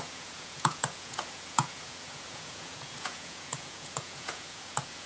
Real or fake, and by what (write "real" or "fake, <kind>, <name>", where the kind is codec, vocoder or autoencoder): fake, vocoder, Vocos